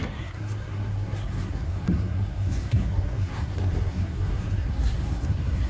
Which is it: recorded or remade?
remade